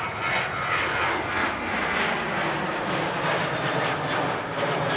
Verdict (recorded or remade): recorded